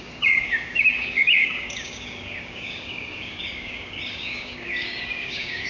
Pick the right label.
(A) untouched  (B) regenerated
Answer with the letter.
B